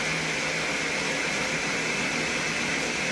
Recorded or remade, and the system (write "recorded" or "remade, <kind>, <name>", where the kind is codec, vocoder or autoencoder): recorded